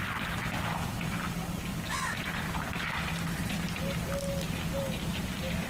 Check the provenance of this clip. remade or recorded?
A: recorded